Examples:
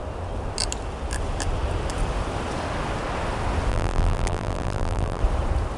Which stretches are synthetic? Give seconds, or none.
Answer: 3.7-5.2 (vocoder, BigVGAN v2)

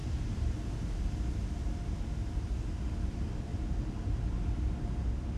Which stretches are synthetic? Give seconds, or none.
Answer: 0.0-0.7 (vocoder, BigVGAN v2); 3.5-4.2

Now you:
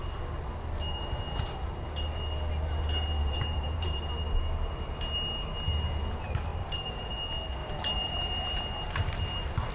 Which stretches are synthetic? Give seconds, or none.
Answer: 3.2-4.0 (vocoder, BigVGAN v2); 6.5-7.1; 7.6-9.7